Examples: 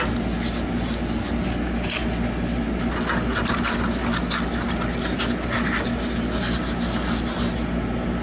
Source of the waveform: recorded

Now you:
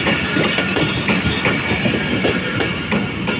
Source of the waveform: recorded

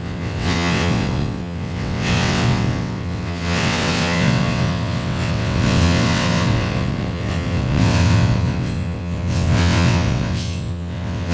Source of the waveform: remade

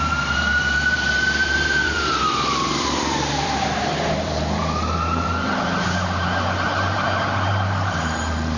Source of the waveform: remade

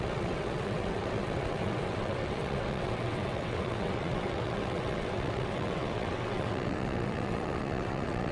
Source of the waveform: remade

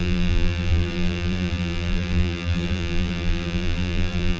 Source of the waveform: remade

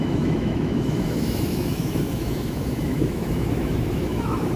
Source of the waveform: remade